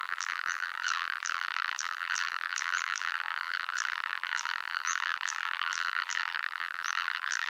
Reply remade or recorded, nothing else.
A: remade